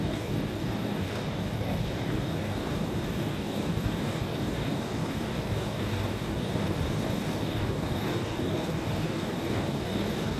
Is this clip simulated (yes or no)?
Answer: yes